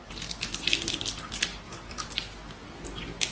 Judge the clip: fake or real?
real